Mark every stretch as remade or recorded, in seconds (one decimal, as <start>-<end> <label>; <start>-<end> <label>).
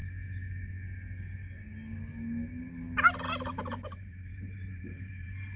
0.0-3.5 recorded; 3.5-5.6 remade